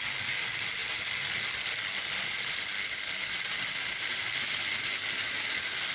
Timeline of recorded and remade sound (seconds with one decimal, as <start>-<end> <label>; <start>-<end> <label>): 0.0-5.9 recorded